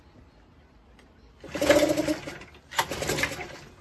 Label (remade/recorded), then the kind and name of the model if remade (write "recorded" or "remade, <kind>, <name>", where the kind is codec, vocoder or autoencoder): recorded